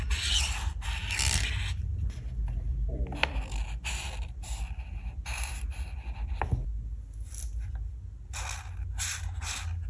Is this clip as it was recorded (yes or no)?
yes